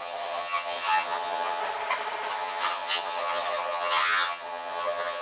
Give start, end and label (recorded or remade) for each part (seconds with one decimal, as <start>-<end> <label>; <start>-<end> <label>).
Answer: 0.0-1.6 remade; 1.6-2.3 recorded; 2.3-5.2 remade